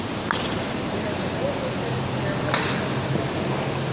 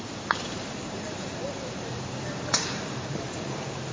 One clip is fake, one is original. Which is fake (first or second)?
second